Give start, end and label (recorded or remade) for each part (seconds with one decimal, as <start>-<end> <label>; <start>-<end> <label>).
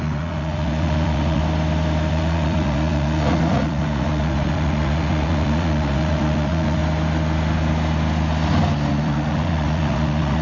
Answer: 0.0-1.4 remade; 1.4-2.1 recorded; 2.1-6.8 remade; 6.8-8.9 recorded; 8.9-10.4 remade